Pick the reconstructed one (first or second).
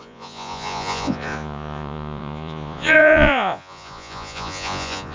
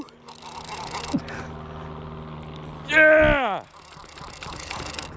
first